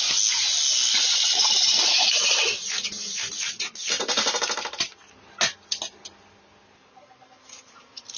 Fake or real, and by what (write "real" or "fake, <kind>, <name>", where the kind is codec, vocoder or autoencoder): real